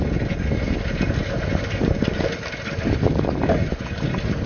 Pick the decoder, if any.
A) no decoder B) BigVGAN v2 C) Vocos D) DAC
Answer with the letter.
A